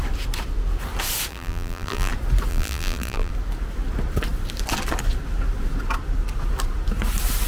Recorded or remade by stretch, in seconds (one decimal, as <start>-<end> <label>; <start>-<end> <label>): 0.0-1.3 recorded; 1.3-2.1 remade; 2.1-2.5 recorded; 2.5-3.3 remade; 3.3-7.5 recorded